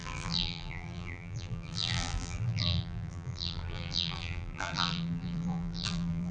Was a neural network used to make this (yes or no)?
yes